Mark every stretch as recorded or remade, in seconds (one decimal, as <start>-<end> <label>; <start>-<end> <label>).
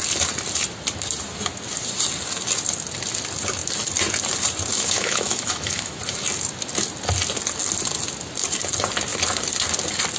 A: 0.0-4.7 recorded; 4.7-6.0 remade; 6.0-10.2 recorded